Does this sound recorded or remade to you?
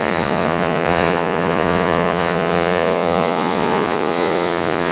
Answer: remade